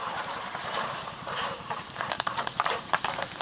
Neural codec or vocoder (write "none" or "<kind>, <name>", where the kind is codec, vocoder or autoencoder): vocoder, BigVGAN v2